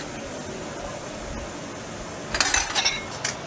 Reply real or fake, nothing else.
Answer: real